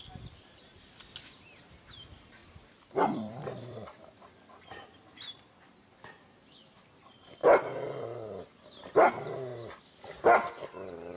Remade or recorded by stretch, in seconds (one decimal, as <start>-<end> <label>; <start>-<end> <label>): 0.0-2.4 recorded; 2.4-6.1 remade; 6.1-11.2 recorded